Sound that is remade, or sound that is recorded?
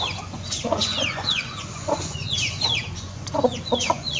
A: remade